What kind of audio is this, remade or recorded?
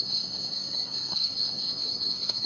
remade